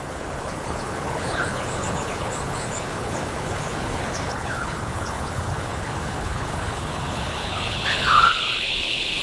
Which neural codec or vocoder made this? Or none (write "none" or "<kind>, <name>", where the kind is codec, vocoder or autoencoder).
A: codec, HILCodec